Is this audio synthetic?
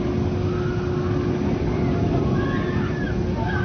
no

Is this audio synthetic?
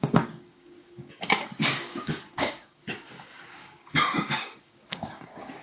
yes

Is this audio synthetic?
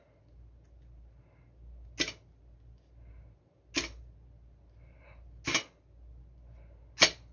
no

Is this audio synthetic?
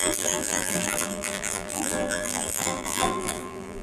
yes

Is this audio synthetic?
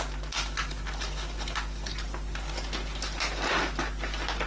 no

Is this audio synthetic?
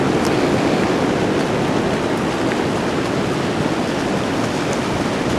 no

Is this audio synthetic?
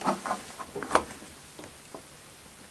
no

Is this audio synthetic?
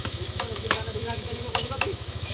yes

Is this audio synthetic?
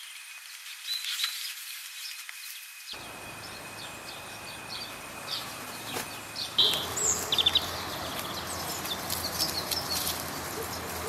yes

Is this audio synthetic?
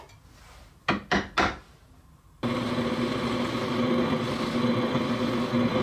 no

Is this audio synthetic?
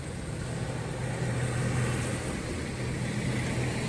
no